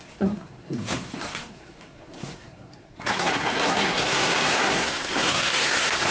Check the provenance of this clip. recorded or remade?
remade